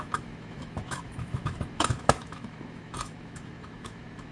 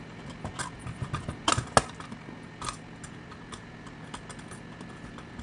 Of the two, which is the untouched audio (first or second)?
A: second